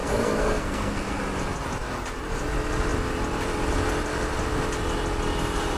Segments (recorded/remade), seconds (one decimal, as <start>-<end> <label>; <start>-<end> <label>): 0.0-1.2 remade; 1.2-5.8 recorded